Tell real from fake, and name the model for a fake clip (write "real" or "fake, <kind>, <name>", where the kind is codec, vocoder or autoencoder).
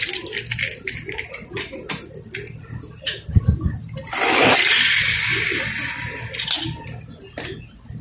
real